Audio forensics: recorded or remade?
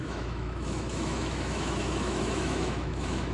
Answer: remade